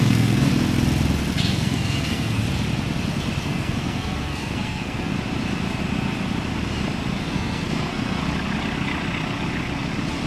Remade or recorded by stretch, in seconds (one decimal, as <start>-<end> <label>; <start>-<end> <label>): 0.0-0.5 remade; 0.5-1.4 recorded; 1.4-2.4 remade; 2.4-3.4 recorded; 3.4-5.1 remade; 5.1-7.2 recorded; 7.2-8.2 remade; 8.2-10.3 recorded